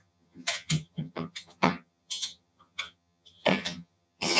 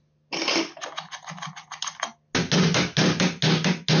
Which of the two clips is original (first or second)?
second